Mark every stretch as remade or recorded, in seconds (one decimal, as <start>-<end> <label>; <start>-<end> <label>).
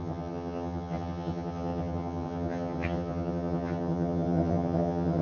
0.0-5.2 remade